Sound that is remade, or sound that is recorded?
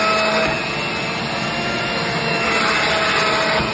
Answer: recorded